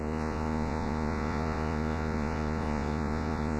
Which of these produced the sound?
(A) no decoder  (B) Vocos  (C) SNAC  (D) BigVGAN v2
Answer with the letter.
B